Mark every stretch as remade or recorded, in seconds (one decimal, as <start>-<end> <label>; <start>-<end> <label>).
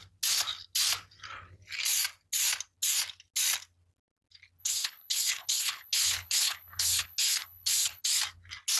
0.0-4.6 recorded; 4.6-8.0 remade; 8.0-8.8 recorded